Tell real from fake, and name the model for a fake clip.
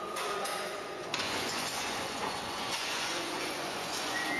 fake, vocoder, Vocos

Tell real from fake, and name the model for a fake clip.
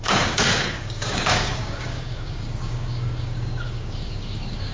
fake, codec, DAC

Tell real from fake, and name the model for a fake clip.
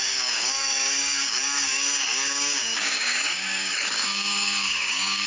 fake, codec, DAC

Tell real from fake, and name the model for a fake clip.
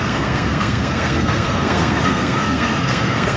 fake, codec, SNAC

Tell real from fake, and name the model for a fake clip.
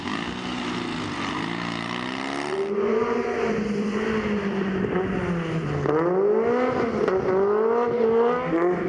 real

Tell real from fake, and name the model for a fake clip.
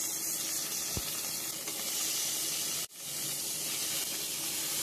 real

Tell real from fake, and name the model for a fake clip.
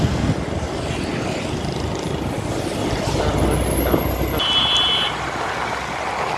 real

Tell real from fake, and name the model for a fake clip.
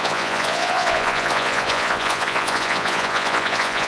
fake, vocoder, Vocos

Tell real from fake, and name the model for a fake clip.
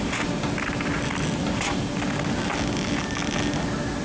real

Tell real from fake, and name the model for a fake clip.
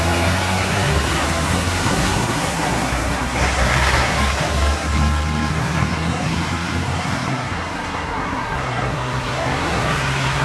fake, codec, SNAC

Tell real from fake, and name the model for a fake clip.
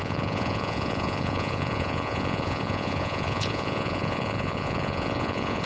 fake, vocoder, Vocos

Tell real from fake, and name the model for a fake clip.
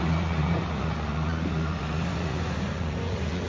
fake, vocoder, Vocos